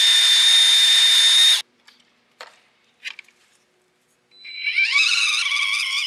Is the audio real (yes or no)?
yes